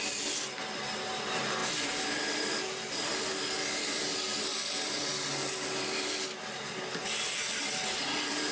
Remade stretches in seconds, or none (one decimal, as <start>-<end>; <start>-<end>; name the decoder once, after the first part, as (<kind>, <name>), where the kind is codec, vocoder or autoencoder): none